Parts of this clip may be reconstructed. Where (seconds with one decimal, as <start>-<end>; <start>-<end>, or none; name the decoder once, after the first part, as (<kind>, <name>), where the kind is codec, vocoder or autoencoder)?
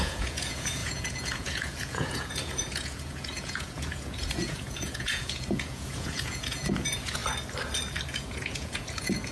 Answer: 0.0-7.2 (vocoder, Vocos); 8.1-9.3